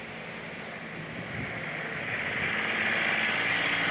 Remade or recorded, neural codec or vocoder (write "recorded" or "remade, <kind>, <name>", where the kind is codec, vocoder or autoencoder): recorded